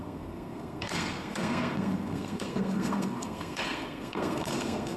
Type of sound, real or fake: fake